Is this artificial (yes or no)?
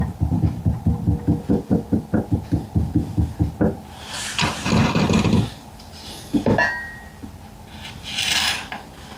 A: no